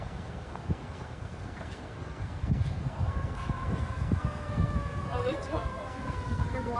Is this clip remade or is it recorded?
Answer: remade